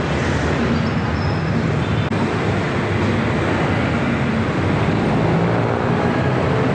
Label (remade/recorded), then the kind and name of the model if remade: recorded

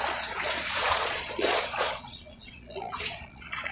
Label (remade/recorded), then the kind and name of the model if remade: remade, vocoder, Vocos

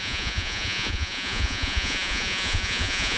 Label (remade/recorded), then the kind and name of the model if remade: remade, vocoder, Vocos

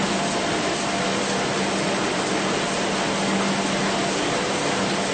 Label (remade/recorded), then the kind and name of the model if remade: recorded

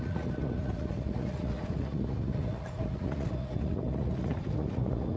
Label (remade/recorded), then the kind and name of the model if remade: remade, vocoder, Vocos